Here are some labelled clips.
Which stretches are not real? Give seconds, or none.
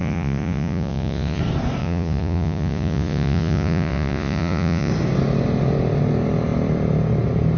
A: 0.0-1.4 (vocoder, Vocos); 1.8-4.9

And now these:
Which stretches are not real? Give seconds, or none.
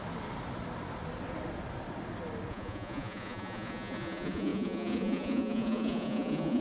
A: 2.5-6.6 (vocoder, Vocos)